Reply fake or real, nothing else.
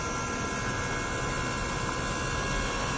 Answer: real